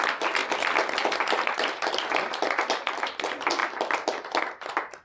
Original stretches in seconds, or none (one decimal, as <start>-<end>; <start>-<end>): 0.0-5.0